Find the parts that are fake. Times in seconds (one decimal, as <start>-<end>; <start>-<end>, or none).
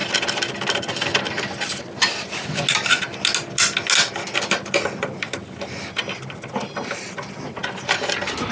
none